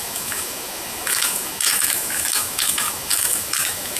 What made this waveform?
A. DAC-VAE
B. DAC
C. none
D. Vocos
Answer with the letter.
A